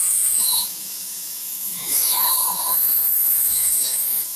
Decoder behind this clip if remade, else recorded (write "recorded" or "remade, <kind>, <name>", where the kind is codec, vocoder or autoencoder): remade, autoencoder, DAC-VAE